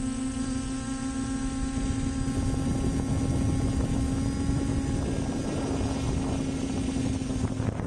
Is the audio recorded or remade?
recorded